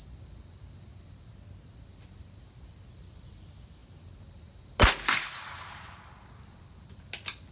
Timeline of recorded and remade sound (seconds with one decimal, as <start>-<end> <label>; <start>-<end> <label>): 0.0-7.5 recorded